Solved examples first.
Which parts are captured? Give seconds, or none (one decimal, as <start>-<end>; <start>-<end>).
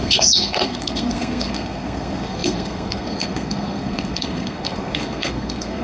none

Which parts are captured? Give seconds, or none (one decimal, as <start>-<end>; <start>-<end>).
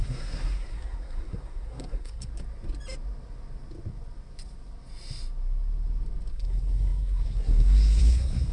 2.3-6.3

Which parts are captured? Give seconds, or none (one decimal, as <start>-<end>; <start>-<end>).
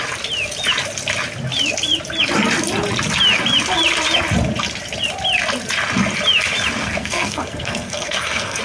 0.0-6.8